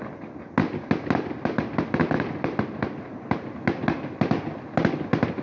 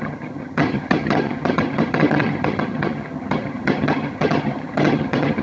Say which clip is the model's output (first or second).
second